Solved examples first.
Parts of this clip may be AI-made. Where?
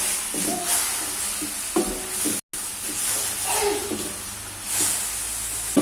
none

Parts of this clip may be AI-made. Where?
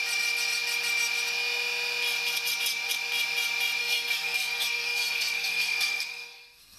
3.8-6.8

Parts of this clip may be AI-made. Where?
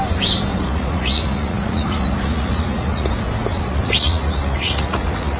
0.5-3.1; 3.5-5.4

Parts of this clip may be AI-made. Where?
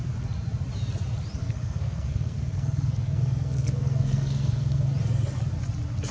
1.4-4.9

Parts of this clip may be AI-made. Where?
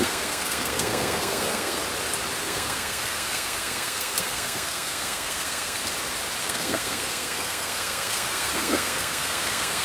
0.0-1.8; 2.4-5.8; 6.4-9.8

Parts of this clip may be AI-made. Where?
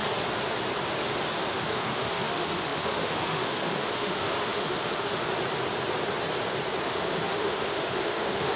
1.4-5.3; 6.8-8.6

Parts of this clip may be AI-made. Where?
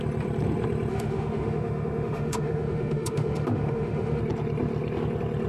0.9-4.2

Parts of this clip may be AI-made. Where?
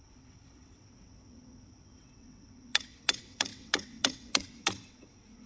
0.0-5.5